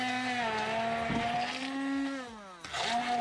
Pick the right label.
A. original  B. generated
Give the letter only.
A